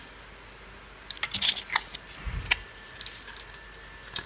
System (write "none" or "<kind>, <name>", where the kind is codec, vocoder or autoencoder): none